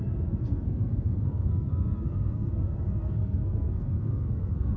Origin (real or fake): fake